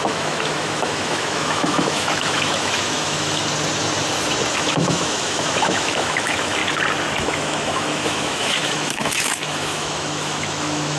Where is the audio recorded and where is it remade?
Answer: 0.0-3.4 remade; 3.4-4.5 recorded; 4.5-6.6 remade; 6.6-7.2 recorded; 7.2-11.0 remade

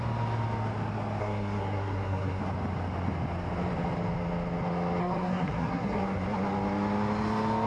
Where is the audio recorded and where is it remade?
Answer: 0.0-1.2 recorded; 1.2-2.4 remade; 2.4-5.0 recorded; 5.0-6.0 remade; 6.0-7.7 recorded